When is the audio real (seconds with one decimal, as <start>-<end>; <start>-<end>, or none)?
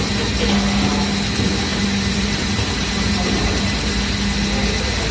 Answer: 0.0-1.7; 3.6-5.1